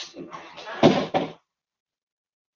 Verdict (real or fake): fake